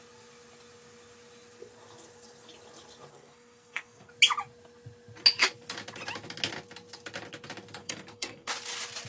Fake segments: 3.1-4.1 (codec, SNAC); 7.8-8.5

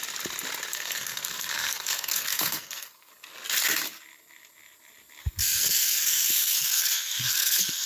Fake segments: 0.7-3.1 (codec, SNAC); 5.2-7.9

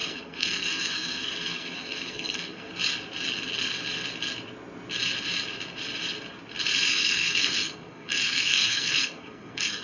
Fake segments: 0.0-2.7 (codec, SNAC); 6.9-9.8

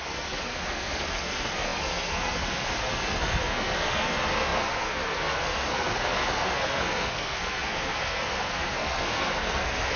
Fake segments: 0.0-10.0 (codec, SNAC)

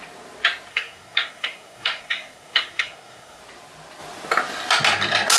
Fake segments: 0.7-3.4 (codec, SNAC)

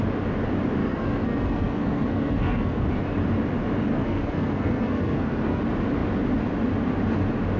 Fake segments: 0.8-2.9 (codec, SNAC); 3.9-5.6